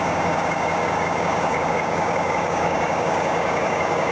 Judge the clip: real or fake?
fake